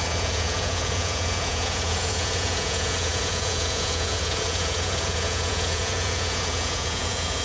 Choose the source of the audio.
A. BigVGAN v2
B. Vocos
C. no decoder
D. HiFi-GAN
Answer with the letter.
B